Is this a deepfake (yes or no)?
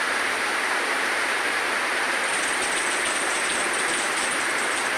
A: yes